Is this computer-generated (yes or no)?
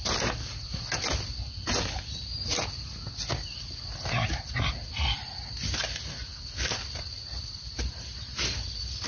no